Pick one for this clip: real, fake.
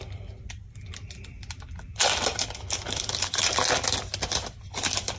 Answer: real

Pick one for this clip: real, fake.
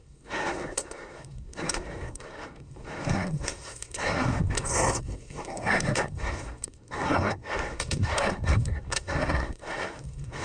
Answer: fake